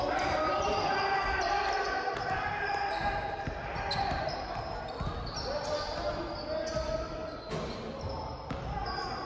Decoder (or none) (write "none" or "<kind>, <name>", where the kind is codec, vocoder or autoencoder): none